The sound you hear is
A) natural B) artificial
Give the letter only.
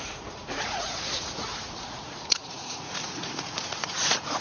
B